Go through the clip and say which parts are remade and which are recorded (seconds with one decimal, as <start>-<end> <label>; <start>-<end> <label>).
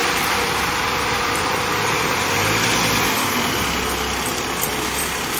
0.0-2.1 remade; 2.1-5.4 recorded